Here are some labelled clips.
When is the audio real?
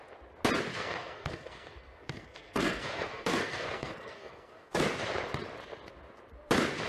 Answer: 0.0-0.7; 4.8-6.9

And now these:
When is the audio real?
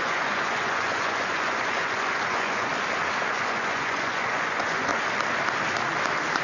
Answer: 2.7-3.3; 4.9-6.4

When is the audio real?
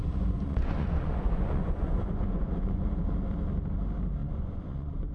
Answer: 3.1-4.2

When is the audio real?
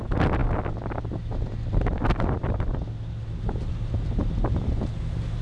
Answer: 0.0-5.4